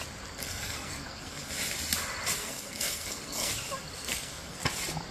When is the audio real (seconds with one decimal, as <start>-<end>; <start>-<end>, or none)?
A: 0.0-0.4; 1.5-2.4; 3.5-4.0; 4.6-5.1